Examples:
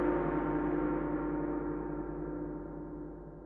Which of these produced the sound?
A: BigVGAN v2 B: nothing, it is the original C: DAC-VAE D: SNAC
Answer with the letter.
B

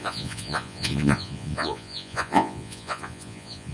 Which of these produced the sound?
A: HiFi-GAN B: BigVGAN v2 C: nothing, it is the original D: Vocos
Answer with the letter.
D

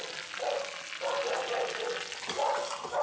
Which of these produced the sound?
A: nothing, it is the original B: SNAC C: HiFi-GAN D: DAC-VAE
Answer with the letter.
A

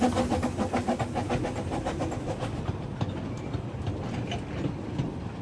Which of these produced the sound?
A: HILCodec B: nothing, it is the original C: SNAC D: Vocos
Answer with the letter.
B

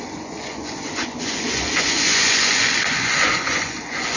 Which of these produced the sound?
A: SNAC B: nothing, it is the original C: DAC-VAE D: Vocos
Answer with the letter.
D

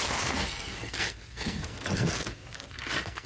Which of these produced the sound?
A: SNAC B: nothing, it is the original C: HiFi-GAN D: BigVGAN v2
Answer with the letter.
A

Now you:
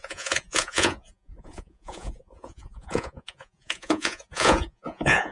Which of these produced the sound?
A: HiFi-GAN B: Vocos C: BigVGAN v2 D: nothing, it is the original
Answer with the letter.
B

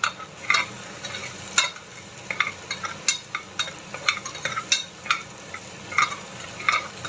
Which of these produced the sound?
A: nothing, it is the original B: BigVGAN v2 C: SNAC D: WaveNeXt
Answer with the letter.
A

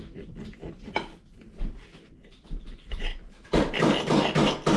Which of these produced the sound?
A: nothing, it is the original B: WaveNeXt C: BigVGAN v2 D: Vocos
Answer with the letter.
A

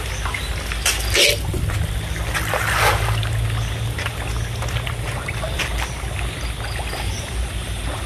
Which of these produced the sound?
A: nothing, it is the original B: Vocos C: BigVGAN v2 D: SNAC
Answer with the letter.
A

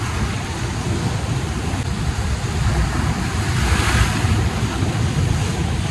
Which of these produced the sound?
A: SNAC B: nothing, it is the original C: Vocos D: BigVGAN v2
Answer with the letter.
D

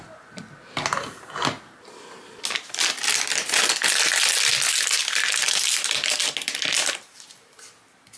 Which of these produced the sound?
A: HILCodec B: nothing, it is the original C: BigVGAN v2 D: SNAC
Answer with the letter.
B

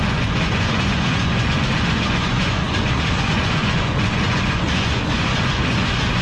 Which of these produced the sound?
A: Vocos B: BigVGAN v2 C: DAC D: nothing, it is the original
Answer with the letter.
A